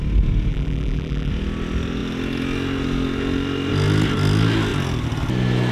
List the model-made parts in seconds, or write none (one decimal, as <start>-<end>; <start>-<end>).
0.5-1.3